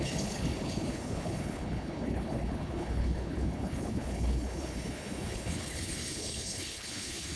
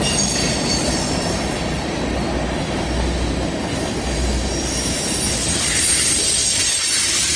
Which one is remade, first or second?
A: first